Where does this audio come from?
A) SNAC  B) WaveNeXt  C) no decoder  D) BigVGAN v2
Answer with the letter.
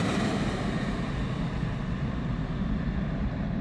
C